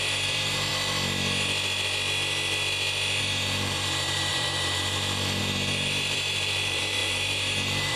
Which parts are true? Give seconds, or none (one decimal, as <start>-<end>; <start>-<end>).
0.7-3.2